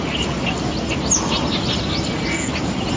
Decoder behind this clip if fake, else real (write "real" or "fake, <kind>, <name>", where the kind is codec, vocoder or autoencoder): real